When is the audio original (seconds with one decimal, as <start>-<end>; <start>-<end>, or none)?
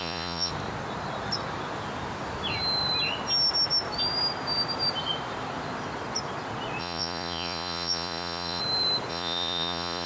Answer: 0.5-6.8; 8.6-9.1